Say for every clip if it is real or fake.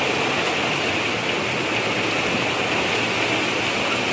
real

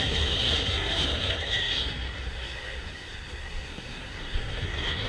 fake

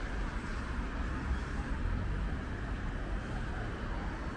real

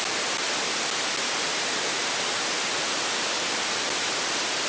real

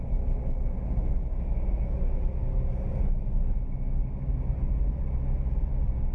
real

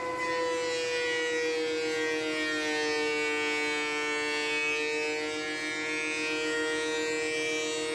real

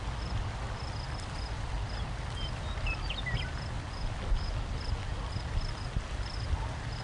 real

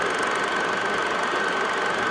real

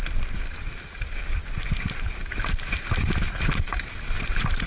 real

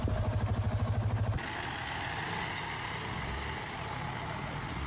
real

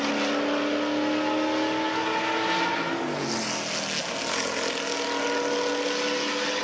real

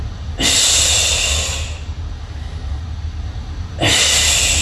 real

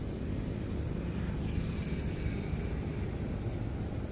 real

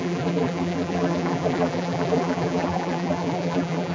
fake